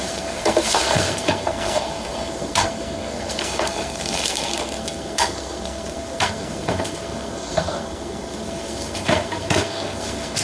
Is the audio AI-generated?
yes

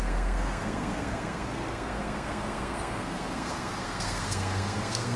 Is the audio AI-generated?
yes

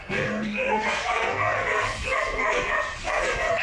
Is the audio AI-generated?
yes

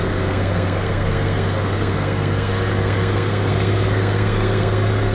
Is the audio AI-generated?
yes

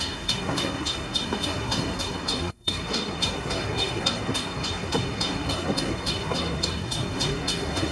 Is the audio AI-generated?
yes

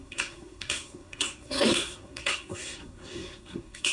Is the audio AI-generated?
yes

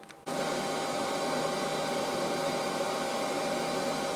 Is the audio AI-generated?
no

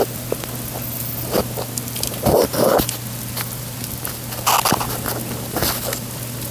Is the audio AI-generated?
no